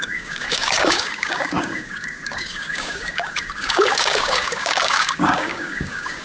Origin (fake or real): fake